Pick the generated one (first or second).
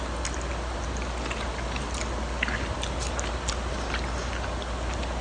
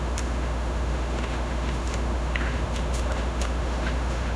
second